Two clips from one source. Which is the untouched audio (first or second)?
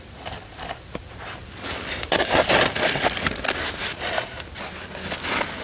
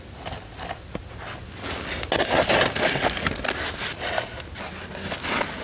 second